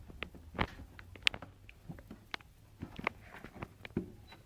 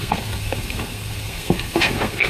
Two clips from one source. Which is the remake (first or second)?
second